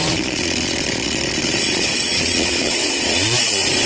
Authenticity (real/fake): fake